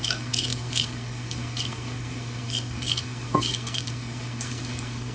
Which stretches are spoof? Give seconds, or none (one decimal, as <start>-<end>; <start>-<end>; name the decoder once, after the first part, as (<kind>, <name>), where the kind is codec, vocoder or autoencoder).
0.0-5.1 (codec, SNAC)